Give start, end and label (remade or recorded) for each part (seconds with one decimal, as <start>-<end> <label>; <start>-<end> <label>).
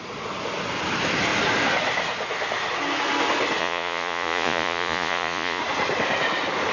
0.0-3.6 recorded; 3.6-5.6 remade; 5.6-6.7 recorded